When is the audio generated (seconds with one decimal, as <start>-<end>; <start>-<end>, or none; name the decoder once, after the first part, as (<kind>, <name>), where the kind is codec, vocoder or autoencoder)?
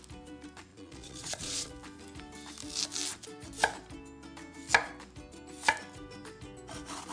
0.7-1.7 (vocoder, Vocos)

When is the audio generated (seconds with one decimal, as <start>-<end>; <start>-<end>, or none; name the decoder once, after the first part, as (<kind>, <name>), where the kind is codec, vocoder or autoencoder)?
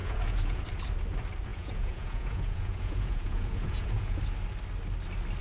0.0-0.6 (vocoder, Vocos); 1.5-4.2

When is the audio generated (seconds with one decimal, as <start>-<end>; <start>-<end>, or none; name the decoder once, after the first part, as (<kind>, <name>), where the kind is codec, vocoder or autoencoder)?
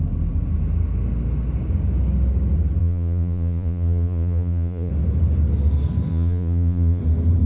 2.8-4.9 (vocoder, Vocos); 6.1-7.0